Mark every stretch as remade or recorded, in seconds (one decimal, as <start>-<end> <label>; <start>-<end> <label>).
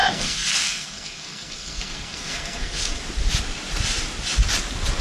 0.0-3.0 remade; 3.0-5.0 recorded